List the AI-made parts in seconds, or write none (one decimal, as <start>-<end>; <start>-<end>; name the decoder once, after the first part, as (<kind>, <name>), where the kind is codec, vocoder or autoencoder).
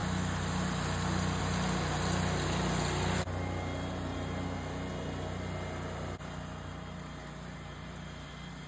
none